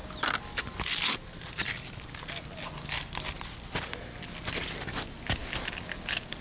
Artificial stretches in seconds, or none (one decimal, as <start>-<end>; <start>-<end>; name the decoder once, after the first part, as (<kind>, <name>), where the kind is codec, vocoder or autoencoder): none